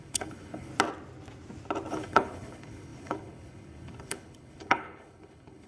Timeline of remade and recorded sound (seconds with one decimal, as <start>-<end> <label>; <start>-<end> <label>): 0.0-0.7 remade; 0.7-1.9 recorded; 1.9-5.7 remade

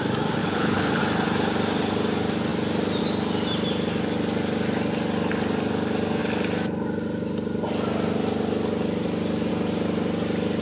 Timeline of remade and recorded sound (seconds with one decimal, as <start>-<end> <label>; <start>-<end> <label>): 0.0-0.4 recorded; 0.4-1.0 remade; 1.0-10.6 recorded

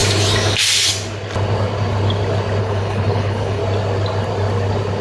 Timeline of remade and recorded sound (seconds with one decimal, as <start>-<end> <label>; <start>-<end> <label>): 0.0-2.6 recorded; 2.6-3.6 remade; 3.6-5.0 recorded

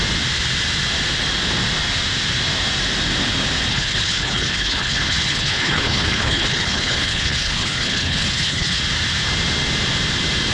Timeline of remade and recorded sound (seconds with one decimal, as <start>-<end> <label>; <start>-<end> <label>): 0.0-3.7 recorded; 3.7-8.8 remade; 8.8-10.5 recorded

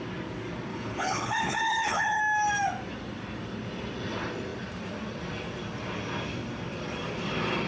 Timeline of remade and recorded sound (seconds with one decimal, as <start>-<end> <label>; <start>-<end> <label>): 0.0-0.7 recorded; 0.7-2.2 remade; 2.2-7.7 recorded